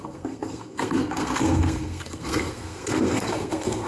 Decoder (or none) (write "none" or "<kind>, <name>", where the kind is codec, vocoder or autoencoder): codec, SNAC